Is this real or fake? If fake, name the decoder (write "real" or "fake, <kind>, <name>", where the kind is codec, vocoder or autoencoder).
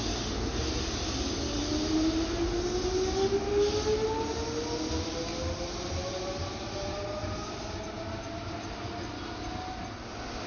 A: real